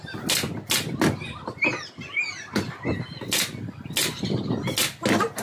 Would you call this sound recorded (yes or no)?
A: yes